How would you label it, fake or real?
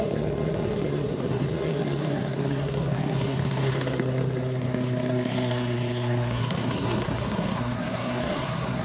fake